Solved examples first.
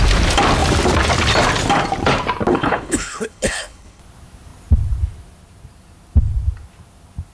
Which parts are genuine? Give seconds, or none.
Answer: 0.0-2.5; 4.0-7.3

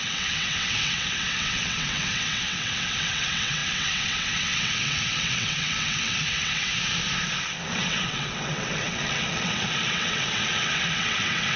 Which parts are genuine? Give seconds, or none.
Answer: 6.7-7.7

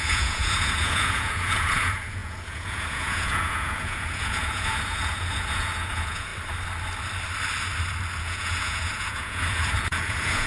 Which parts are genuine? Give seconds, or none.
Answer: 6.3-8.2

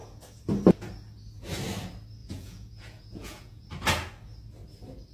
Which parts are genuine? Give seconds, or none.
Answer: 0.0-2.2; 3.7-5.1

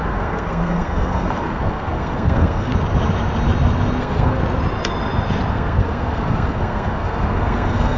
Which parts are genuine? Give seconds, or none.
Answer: 2.7-4.0; 4.4-5.5

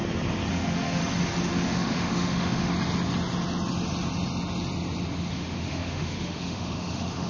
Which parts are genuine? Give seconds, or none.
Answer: 0.0-0.5; 1.0-1.5; 2.7-5.3